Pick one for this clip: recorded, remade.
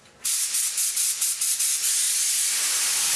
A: recorded